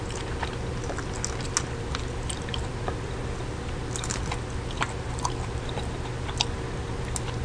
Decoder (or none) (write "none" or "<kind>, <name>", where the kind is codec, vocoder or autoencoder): none